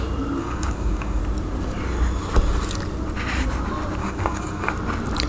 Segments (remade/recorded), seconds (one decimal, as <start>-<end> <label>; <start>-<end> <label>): 0.0-0.4 recorded; 0.4-1.2 remade; 1.2-4.0 recorded; 4.0-4.7 remade; 4.7-5.3 recorded